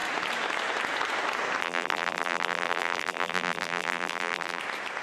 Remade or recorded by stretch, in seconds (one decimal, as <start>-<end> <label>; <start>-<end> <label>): 0.0-1.6 recorded; 1.6-4.6 remade; 4.6-5.0 recorded